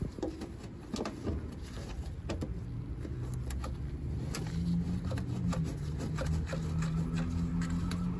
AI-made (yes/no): no